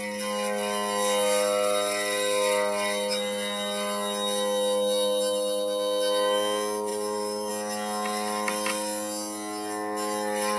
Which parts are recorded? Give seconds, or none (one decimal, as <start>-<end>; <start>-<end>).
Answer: 0.0-6.9; 7.5-10.6